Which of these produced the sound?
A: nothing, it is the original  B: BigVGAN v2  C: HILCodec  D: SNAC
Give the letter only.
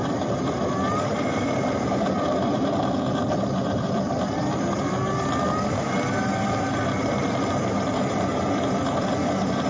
B